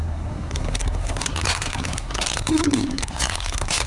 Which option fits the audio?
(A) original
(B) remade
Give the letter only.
B